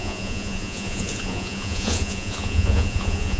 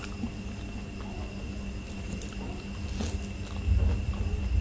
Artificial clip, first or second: first